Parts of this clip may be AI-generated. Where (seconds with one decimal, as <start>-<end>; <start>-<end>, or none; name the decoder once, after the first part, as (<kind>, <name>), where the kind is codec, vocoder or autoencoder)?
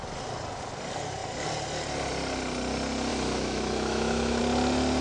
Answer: 3.1-4.4 (autoencoder, DAC-VAE)